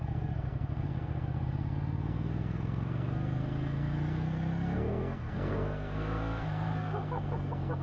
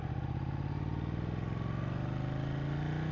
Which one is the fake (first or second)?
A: first